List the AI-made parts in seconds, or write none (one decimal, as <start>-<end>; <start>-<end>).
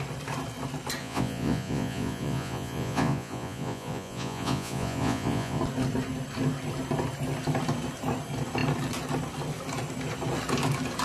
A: 1.0-5.6